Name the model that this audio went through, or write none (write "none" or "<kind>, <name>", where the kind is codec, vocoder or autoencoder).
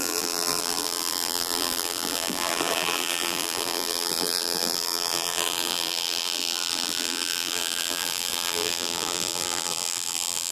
vocoder, BigVGAN v2